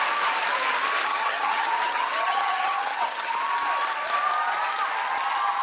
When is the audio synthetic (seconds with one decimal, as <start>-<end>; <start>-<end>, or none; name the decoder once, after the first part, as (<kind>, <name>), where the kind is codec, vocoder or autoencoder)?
1.1-3.3 (vocoder, HiFi-GAN)